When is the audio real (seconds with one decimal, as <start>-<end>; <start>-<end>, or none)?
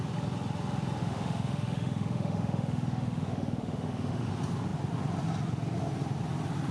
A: 0.0-1.0; 4.3-6.7